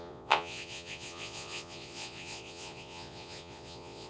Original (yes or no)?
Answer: no